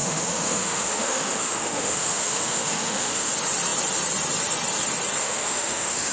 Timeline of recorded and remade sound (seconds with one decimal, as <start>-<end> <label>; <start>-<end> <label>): 0.0-3.3 remade; 3.3-5.2 recorded; 5.2-6.1 remade